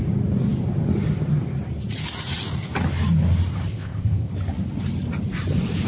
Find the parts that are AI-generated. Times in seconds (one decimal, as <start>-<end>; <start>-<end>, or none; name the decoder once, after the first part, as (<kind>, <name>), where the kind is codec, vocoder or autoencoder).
3.7-4.3 (codec, ZipCodec)